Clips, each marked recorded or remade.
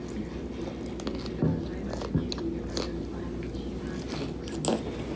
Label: recorded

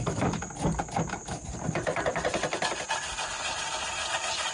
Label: recorded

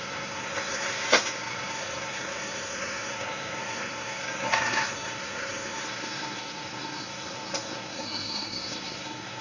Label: remade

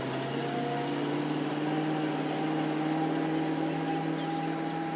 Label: recorded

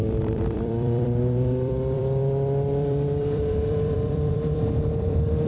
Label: remade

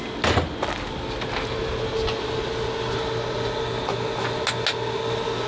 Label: recorded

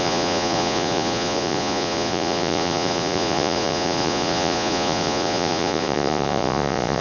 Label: remade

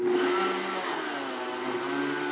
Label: recorded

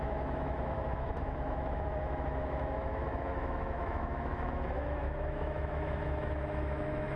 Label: remade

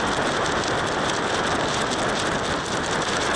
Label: recorded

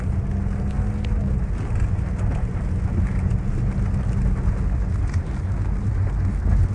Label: recorded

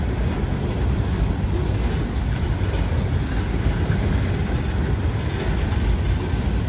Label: recorded